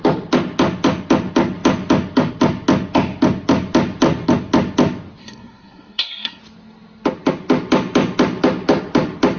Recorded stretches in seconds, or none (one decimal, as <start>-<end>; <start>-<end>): 0.0-5.2; 6.4-9.4